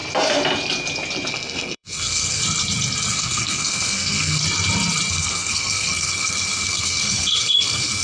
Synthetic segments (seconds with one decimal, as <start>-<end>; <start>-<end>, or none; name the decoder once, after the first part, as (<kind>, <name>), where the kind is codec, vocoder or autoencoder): 1.3-2.4 (codec, SNAC); 3.1-4.4; 5.1-8.0